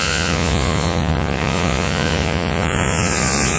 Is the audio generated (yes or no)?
yes